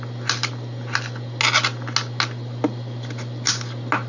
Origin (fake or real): real